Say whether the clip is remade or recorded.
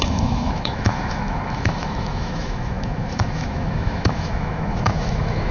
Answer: remade